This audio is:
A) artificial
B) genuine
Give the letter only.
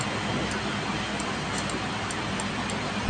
B